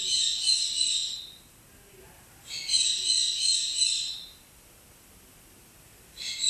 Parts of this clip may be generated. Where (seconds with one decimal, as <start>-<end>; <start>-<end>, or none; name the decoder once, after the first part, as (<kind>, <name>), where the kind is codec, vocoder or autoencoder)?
none